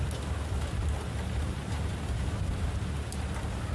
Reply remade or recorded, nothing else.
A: recorded